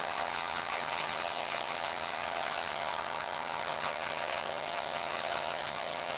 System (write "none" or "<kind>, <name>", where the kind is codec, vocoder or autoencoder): vocoder, HiFi-GAN